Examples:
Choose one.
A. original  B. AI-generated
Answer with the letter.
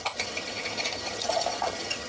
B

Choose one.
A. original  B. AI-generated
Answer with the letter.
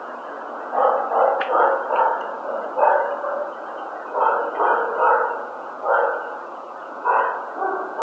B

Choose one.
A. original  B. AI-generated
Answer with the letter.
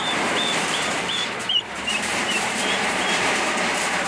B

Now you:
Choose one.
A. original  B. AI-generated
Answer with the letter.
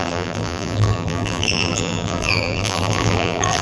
B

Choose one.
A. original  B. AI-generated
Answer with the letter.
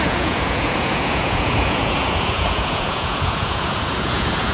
B